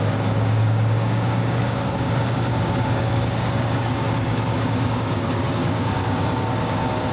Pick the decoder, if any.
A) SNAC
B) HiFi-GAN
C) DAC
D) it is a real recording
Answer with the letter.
C